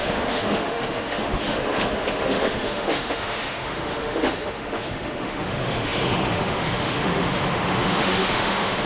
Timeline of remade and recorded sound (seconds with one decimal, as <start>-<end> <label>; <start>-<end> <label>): 0.0-8.9 remade